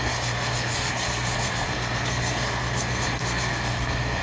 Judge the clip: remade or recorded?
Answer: remade